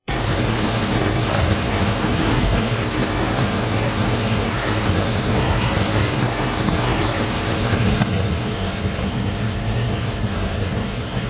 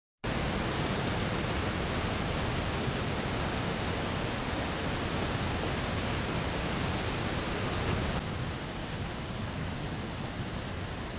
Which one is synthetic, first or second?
first